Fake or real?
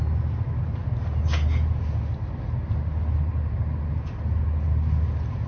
real